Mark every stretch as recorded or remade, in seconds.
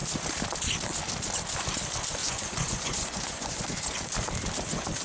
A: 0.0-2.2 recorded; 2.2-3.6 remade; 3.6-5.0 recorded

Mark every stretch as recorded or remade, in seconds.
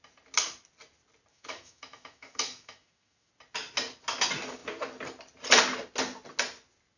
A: 0.0-1.3 recorded; 1.3-3.3 remade; 3.3-7.0 recorded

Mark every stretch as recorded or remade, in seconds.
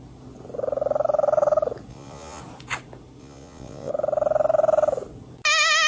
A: 0.0-1.9 recorded; 1.9-2.4 remade; 2.4-3.2 recorded; 3.2-3.9 remade; 3.9-5.9 recorded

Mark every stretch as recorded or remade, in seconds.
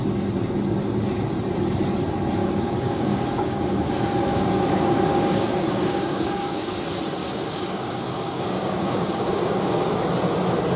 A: 0.0-2.4 recorded; 2.4-6.8 remade; 6.8-7.2 recorded; 7.2-9.9 remade; 9.9-10.8 recorded